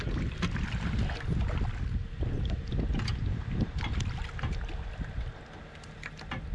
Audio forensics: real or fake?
real